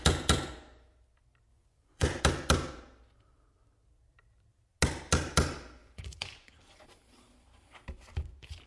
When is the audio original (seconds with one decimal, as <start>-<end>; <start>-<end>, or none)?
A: 0.0-1.5; 2.2-5.8; 6.5-8.7